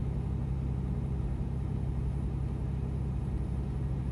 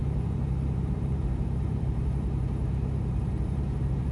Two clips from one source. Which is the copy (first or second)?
second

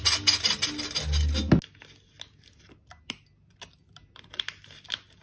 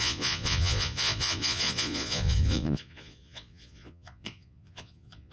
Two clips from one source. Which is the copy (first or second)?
second